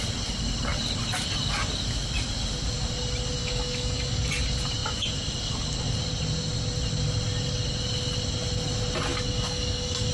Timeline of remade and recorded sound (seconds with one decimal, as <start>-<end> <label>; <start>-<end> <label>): 0.0-3.4 recorded; 3.4-4.3 remade; 4.3-9.1 recorded; 9.1-10.1 remade